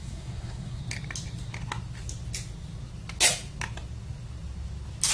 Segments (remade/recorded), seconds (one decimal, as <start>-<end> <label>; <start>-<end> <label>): 0.0-0.8 remade; 0.8-5.1 recorded